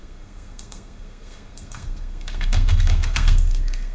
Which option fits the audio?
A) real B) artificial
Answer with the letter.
B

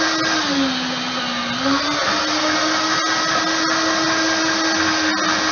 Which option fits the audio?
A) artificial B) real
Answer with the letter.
B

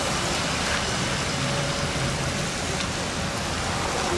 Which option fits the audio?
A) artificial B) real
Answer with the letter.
B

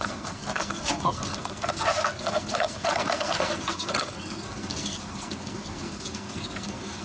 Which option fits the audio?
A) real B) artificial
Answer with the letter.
B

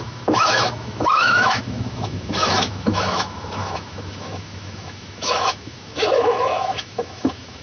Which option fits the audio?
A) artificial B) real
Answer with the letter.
A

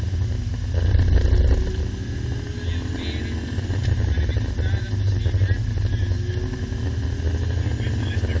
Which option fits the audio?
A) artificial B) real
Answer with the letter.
B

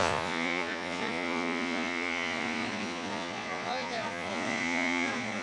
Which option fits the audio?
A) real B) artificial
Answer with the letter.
B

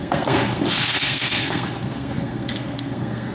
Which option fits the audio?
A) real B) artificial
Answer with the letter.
B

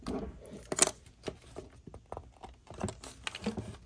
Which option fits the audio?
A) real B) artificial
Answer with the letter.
A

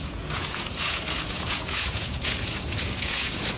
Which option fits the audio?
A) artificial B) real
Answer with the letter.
A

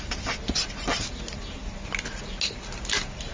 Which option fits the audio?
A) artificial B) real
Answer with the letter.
B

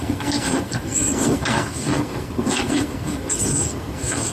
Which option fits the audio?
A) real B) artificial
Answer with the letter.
B